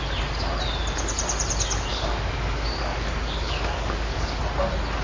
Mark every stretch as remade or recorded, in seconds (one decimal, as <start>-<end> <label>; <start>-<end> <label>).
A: 0.0-1.9 recorded; 1.9-4.4 remade; 4.4-5.0 recorded